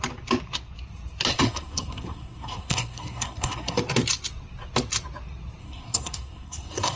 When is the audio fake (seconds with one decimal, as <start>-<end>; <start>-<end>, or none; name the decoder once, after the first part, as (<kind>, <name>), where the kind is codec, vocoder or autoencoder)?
1.3-3.8 (codec, SNAC); 5.6-7.0